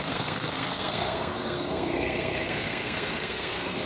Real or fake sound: fake